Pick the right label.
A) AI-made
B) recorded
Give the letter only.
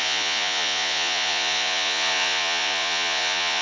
A